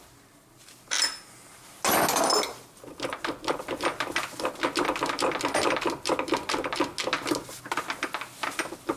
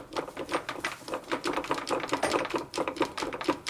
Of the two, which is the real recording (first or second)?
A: first